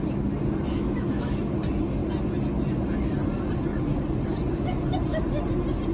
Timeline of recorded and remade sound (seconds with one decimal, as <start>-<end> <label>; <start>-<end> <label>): 0.0-0.7 recorded; 0.7-1.5 remade; 1.5-5.9 recorded